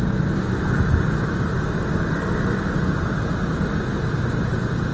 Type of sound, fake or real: real